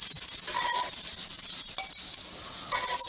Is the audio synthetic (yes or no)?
no